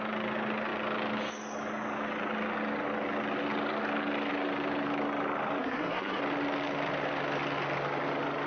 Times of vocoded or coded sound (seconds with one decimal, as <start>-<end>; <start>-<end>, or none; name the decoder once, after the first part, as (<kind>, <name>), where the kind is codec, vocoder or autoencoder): 5.6-6.2 (codec, SNAC)